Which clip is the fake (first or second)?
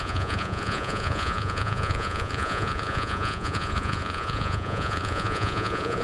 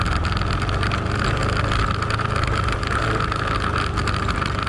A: first